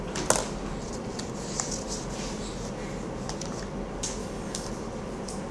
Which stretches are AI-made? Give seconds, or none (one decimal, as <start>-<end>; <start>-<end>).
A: 4.2-4.7